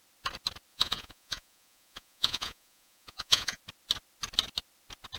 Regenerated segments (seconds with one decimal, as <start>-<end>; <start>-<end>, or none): 0.7-3.6